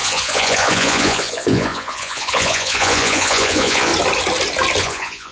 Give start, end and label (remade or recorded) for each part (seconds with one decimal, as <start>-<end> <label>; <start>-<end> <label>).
0.0-3.9 remade; 3.9-4.8 recorded; 4.8-5.3 remade

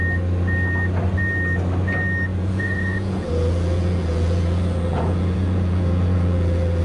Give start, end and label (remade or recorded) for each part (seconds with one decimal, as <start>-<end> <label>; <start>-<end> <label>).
0.0-2.3 recorded; 2.3-6.8 remade

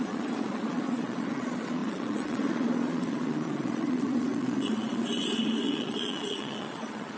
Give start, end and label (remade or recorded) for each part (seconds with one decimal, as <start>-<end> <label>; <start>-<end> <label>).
0.0-7.2 remade

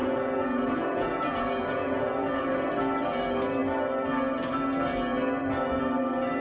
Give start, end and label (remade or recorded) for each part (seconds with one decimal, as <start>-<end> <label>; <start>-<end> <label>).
0.0-2.7 remade; 2.7-6.4 recorded

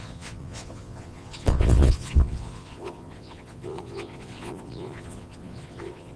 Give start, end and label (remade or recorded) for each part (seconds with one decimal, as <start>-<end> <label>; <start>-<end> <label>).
0.0-6.2 remade

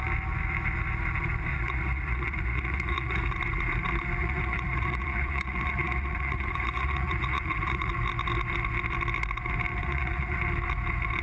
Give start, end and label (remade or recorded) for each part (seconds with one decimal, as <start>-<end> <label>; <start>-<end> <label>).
0.0-1.5 recorded; 1.5-3.2 remade; 3.2-4.2 recorded; 4.2-7.9 remade; 7.9-9.8 recorded; 9.8-10.4 remade; 10.4-11.2 recorded

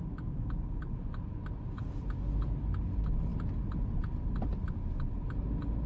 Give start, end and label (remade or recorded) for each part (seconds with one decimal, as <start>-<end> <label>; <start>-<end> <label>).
0.0-5.9 recorded